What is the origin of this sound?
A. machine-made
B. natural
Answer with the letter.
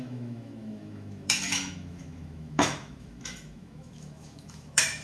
A